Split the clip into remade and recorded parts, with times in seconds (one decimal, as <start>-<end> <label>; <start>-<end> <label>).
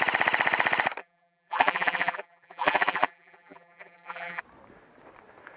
0.0-1.0 recorded; 1.0-4.4 remade; 4.4-5.6 recorded